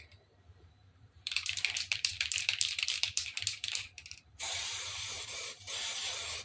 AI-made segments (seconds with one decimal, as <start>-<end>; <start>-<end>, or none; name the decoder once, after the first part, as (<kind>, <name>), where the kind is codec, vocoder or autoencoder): 0.0-6.4 (vocoder, BigVGAN v2)

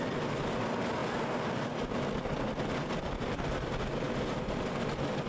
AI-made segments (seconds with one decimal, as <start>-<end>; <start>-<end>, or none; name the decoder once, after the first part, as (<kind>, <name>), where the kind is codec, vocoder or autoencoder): none

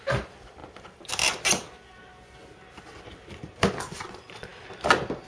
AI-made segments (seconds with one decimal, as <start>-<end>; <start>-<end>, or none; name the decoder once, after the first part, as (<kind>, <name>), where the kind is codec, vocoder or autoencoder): none

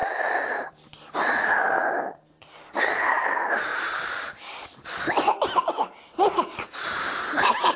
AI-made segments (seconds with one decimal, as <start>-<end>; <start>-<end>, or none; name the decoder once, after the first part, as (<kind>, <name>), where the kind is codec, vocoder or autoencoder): 0.0-2.8 (vocoder, BigVGAN v2); 3.7-5.7

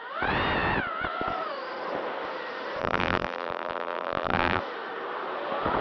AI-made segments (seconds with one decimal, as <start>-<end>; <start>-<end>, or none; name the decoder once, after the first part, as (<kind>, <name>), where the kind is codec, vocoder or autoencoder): 2.8-4.6 (vocoder, BigVGAN v2)

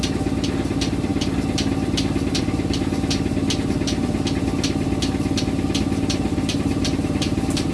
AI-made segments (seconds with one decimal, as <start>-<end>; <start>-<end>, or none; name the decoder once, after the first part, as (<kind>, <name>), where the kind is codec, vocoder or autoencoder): 6.3-7.7 (vocoder, BigVGAN v2)